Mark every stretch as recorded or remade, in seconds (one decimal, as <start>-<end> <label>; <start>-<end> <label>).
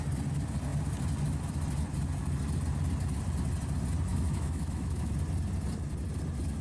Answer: 0.0-4.1 recorded; 4.1-5.1 remade; 5.1-6.6 recorded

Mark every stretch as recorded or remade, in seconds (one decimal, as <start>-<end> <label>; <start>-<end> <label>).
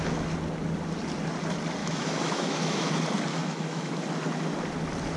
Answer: 0.0-1.8 recorded; 1.8-2.9 remade; 2.9-3.3 recorded; 3.3-3.9 remade; 3.9-5.2 recorded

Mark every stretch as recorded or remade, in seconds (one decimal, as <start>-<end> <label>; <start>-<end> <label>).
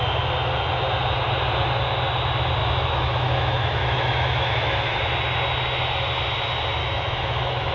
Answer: 0.0-2.6 recorded; 2.6-5.0 remade; 5.0-6.8 recorded; 6.8-7.7 remade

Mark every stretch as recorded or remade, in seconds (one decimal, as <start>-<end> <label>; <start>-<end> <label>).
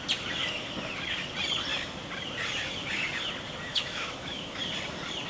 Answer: 0.0-3.7 recorded; 3.7-4.6 remade; 4.6-5.3 recorded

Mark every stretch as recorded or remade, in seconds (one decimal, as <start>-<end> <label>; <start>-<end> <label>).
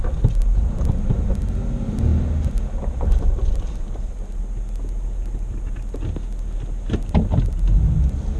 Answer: 0.0-8.4 recorded